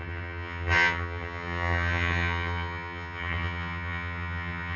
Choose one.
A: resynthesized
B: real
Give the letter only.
A